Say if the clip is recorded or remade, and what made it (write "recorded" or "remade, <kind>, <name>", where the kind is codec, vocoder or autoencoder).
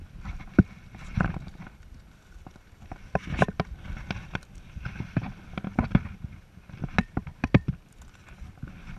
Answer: recorded